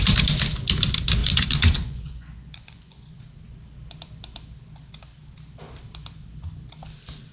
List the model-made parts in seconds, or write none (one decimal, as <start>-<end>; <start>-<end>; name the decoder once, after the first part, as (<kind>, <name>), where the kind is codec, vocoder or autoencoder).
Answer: 1.2-3.2 (vocoder, Vocos)